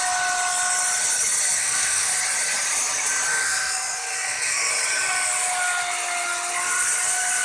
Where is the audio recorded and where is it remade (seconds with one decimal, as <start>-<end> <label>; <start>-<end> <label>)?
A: 0.0-1.6 recorded; 1.6-2.1 remade; 2.1-3.3 recorded; 3.3-4.7 remade; 4.7-7.4 recorded